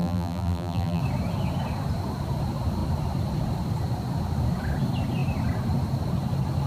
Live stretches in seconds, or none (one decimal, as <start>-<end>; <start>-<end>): 1.0-6.7